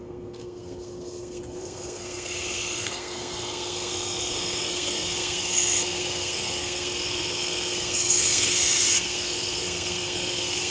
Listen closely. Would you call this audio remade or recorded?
remade